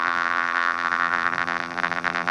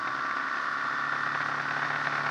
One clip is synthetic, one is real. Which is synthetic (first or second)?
first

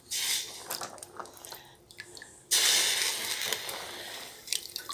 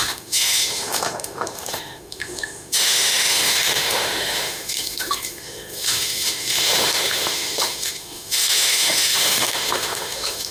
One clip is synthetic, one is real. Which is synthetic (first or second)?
second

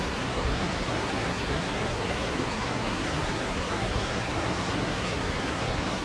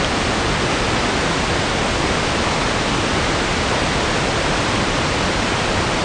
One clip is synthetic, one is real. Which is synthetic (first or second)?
first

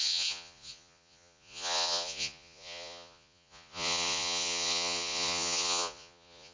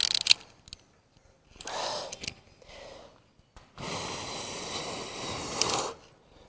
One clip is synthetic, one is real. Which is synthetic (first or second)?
first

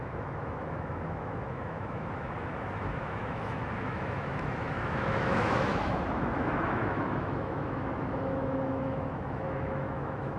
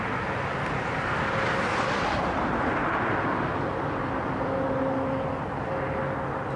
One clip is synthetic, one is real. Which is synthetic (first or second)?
first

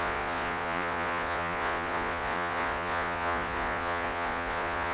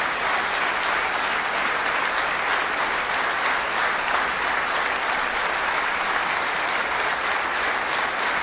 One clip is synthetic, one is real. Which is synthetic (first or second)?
first